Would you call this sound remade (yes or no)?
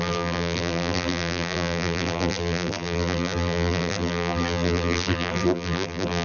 yes